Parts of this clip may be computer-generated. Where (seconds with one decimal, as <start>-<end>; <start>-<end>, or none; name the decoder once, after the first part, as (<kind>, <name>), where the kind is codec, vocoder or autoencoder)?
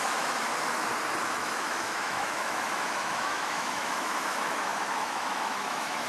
0.0-0.5 (autoencoder, DAC-VAE); 1.2-6.1